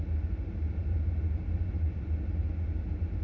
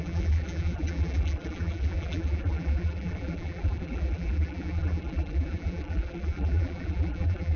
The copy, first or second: second